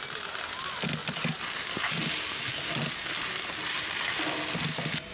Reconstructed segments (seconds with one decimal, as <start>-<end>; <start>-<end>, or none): none